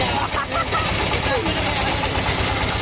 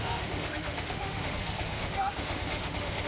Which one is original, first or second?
first